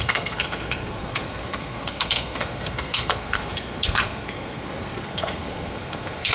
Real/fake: fake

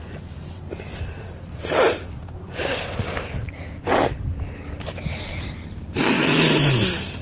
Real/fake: real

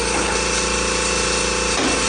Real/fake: real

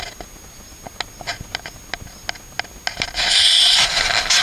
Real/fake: real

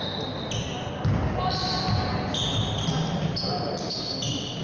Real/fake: real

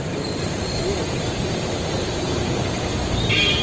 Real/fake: fake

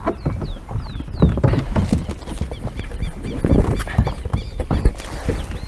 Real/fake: real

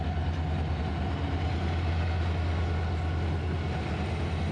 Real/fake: real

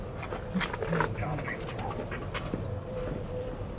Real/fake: fake